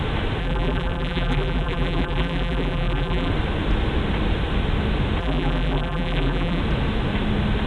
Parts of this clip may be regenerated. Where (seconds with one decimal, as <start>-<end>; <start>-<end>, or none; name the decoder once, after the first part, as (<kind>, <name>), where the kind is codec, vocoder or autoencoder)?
0.4-3.3 (vocoder, BigVGAN v2); 5.2-6.6